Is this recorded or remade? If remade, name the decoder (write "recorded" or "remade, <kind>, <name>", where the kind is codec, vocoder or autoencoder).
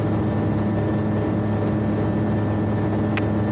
recorded